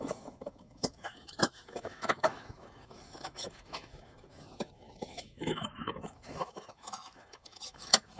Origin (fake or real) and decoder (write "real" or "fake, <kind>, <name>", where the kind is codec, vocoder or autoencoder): fake, autoencoder, DAC-VAE